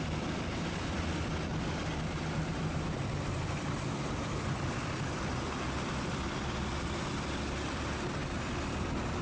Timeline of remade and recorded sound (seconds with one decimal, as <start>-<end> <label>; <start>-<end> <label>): 0.0-1.5 remade; 1.5-2.5 recorded; 2.5-8.2 remade; 8.2-9.2 recorded